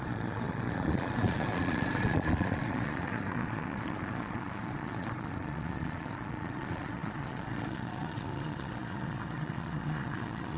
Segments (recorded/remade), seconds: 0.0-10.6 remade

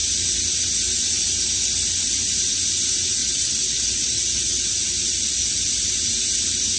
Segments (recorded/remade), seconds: 0.0-3.2 recorded; 3.2-4.6 remade; 4.6-6.8 recorded

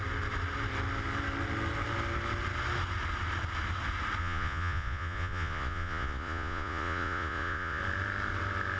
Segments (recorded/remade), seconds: 0.0-4.2 recorded; 4.2-7.8 remade; 7.8-8.8 recorded

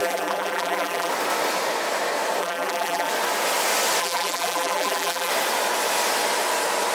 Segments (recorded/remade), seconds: 0.0-1.1 remade; 1.1-2.4 recorded; 2.4-3.1 remade; 3.1-4.0 recorded; 4.0-5.3 remade; 5.3-6.9 recorded

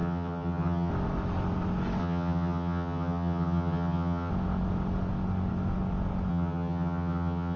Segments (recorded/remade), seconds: 0.0-0.9 remade; 0.9-2.0 recorded; 2.0-4.3 remade; 4.3-6.3 recorded; 6.3-7.6 remade